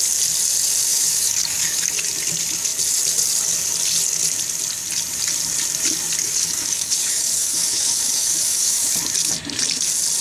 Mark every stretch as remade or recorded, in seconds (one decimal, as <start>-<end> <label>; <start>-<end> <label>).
0.0-0.9 recorded; 0.9-2.1 remade; 2.1-6.2 recorded; 6.2-8.9 remade; 8.9-10.2 recorded